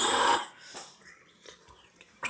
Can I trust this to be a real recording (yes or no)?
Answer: no